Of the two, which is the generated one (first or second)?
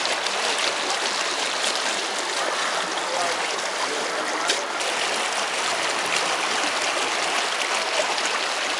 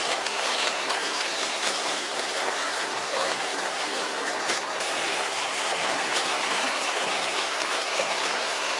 second